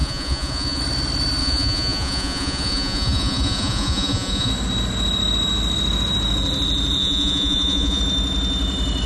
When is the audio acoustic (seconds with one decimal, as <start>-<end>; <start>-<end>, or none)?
0.8-1.4; 4.5-7.0; 8.0-9.1